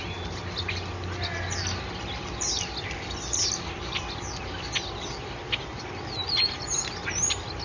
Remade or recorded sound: recorded